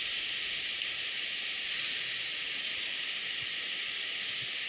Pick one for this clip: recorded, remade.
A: recorded